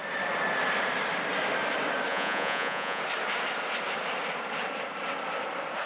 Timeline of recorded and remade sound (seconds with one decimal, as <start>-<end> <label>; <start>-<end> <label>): 0.0-2.1 recorded; 2.1-3.0 remade; 3.0-5.9 recorded